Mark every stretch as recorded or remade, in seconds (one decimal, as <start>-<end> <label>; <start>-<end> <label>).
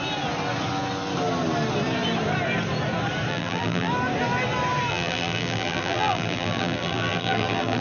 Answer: 0.0-3.3 recorded; 3.3-3.9 remade; 3.9-4.9 recorded; 4.9-7.8 remade